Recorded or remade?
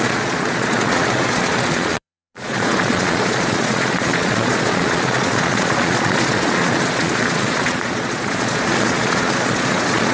remade